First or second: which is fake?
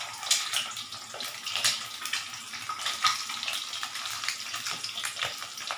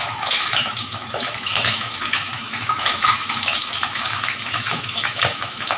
second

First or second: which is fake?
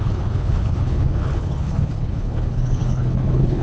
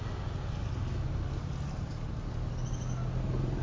first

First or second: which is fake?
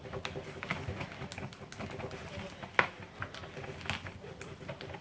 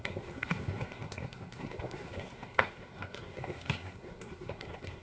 second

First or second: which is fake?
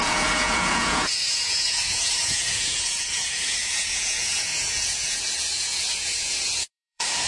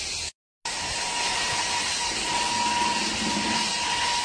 first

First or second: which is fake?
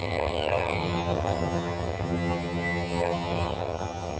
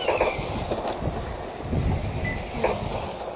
first